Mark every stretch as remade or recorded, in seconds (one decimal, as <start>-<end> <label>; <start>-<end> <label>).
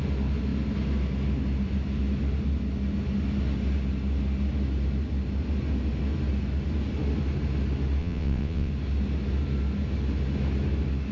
0.0-8.0 recorded; 8.0-8.7 remade; 8.7-11.1 recorded